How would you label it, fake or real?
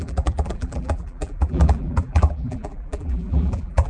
fake